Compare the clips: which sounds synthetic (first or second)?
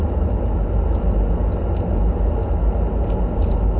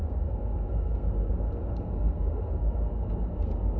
second